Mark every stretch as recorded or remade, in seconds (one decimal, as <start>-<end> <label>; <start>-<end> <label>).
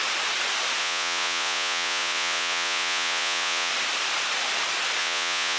0.0-0.8 recorded; 0.8-3.7 remade; 3.7-5.0 recorded; 5.0-5.6 remade